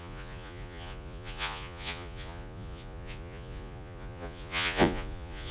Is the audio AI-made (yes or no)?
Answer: yes